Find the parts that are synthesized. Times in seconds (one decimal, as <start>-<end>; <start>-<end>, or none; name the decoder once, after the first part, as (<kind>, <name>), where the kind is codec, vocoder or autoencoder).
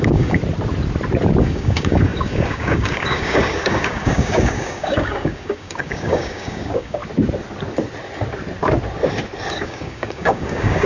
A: 0.0-0.4 (codec, DAC); 1.4-7.0; 9.5-10.9